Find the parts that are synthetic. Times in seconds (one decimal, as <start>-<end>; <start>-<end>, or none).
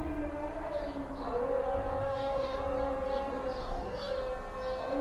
2.0-2.6; 3.6-4.1